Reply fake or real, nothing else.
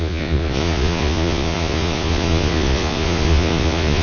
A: fake